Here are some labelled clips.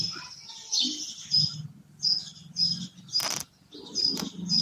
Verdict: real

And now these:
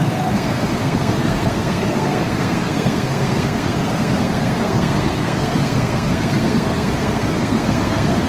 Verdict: fake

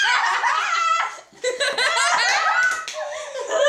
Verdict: real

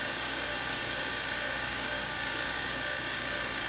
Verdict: fake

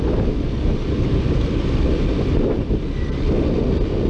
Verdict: real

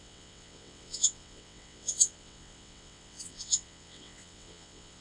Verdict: fake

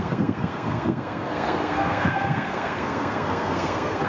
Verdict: fake